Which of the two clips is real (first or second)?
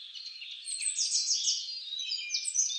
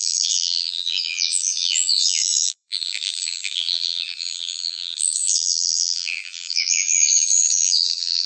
first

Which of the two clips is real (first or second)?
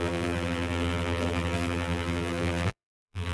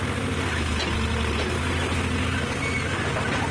second